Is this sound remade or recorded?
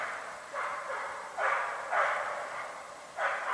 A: recorded